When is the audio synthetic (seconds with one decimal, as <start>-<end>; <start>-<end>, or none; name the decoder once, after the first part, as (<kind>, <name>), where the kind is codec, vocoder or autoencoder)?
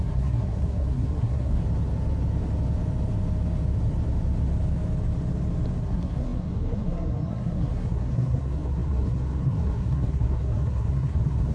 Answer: 0.0-1.6 (codec, SNAC); 5.8-11.5